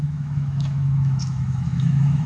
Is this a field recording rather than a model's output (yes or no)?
no